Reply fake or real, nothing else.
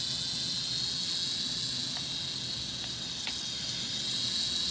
real